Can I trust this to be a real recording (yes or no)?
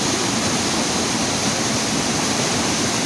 yes